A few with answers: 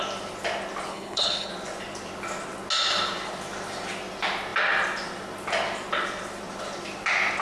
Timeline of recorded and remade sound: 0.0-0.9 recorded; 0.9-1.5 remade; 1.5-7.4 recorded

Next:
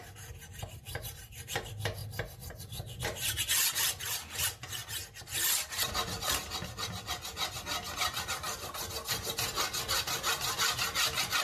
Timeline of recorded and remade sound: 0.0-11.4 recorded